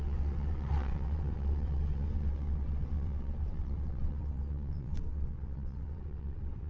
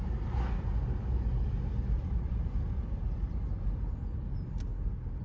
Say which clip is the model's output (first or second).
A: first